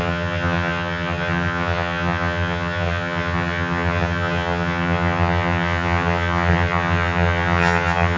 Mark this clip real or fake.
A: fake